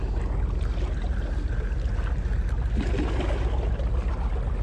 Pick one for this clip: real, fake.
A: real